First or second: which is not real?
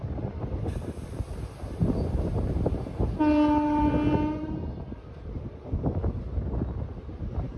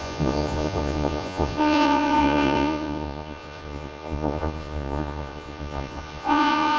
second